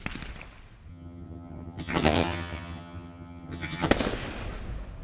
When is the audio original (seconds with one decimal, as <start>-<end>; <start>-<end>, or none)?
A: 0.0-0.9; 3.9-5.0